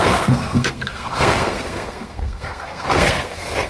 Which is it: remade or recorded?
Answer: remade